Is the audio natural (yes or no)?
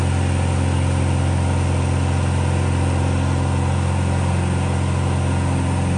yes